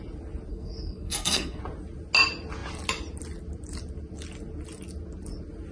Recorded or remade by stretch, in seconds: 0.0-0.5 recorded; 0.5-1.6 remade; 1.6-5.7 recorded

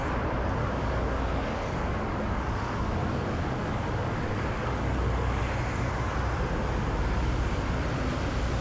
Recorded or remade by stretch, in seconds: 0.0-0.6 recorded; 0.6-5.4 remade; 5.4-8.6 recorded

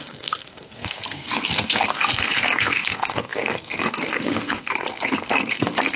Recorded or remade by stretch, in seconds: 0.0-6.0 remade

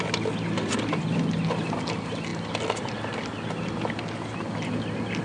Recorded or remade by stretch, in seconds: 0.0-5.2 recorded

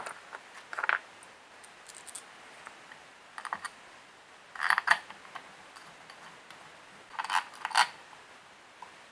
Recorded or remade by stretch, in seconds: 0.0-9.1 recorded

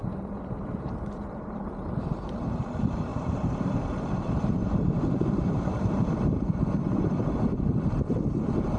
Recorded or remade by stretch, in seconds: 0.0-2.3 remade; 2.3-3.1 recorded; 3.1-7.4 remade; 7.4-8.8 recorded

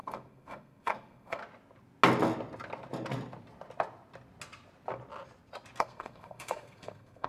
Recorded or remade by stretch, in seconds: 0.0-1.4 remade; 1.4-5.8 recorded; 5.8-7.3 remade